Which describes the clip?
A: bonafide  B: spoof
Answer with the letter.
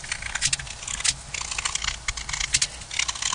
A